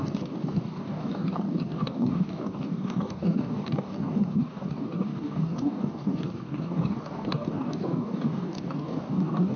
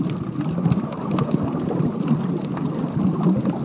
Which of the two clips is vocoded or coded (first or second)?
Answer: first